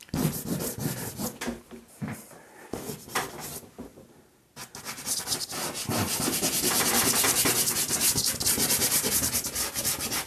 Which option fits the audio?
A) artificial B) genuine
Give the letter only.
B